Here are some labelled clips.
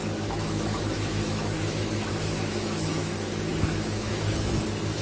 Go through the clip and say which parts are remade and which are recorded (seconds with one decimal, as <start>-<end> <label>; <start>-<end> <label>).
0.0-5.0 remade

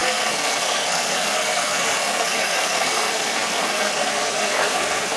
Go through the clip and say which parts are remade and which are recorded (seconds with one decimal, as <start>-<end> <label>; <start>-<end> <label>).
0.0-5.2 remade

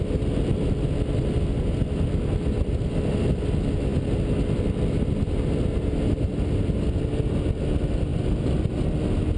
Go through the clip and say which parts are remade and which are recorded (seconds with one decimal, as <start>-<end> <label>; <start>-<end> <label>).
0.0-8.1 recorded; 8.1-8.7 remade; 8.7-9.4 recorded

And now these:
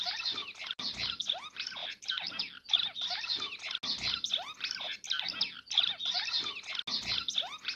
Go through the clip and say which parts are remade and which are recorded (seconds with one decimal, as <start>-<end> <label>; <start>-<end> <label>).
0.0-7.8 recorded